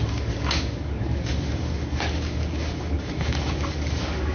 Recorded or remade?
remade